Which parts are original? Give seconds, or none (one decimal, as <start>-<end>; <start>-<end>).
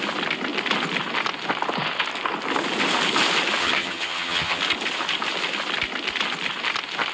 0.0-3.6; 4.6-7.1